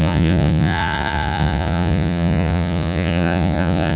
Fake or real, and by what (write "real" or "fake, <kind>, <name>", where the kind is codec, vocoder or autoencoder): fake, vocoder, Vocos